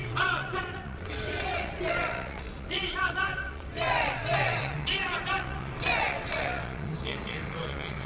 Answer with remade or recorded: remade